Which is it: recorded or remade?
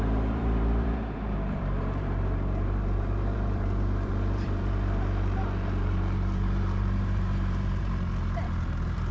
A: remade